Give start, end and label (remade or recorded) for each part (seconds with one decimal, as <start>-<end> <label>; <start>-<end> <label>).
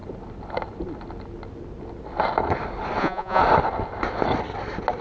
0.0-3.0 recorded; 3.0-3.4 remade; 3.4-5.0 recorded